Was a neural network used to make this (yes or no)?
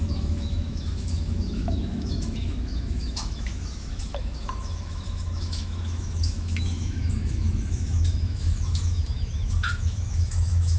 yes